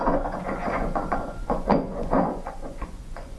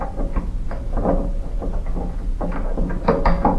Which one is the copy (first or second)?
first